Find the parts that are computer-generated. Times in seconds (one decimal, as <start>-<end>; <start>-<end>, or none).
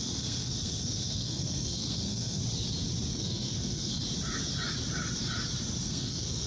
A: 0.0-2.4; 3.1-4.0; 5.8-6.5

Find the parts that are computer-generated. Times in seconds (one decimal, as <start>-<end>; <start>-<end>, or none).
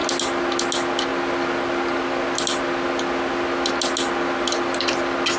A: none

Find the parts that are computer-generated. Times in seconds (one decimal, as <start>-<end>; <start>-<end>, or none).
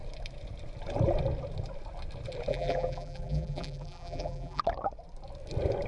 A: 2.5-4.6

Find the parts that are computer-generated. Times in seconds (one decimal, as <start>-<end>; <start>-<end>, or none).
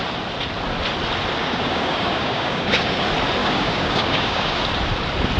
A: 1.4-3.0; 3.4-4.6